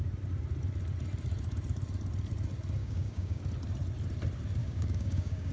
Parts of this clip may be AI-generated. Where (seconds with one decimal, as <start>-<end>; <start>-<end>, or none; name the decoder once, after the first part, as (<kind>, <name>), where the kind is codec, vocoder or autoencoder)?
2.8-3.4 (codec, DAC); 4.6-5.5